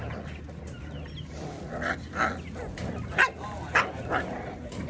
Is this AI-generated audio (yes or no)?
no